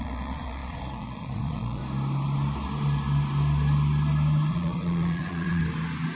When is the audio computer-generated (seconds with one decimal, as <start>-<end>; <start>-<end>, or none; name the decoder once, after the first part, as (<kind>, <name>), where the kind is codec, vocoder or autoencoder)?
0.0-1.8 (vocoder, Vocos); 4.5-5.6